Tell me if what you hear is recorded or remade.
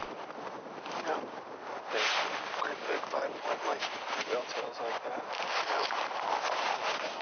recorded